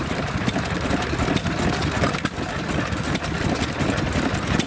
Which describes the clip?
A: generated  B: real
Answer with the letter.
B